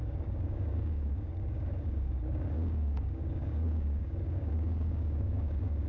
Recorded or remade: remade